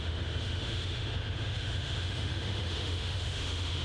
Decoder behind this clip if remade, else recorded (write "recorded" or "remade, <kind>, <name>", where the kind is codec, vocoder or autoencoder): remade, autoencoder, DAC-VAE